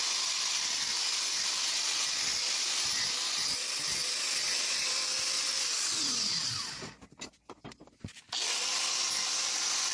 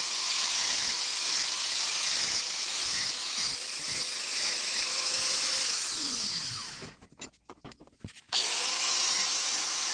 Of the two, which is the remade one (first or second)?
second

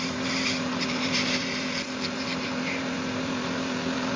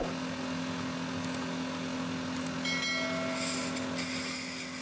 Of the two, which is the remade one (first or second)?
first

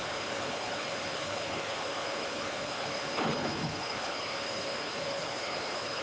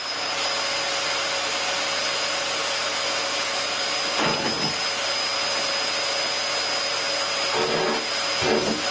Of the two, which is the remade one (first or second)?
first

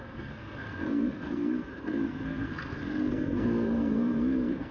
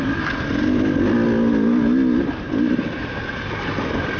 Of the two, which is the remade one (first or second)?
first